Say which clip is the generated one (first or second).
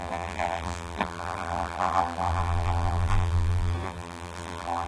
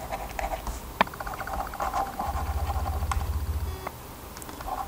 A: first